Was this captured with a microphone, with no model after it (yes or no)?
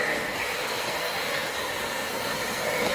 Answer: no